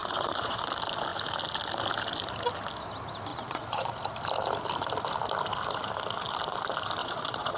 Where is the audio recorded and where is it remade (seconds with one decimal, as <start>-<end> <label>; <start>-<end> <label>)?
0.0-0.6 remade; 0.6-3.3 recorded; 3.3-4.0 remade; 4.0-7.0 recorded; 7.0-7.6 remade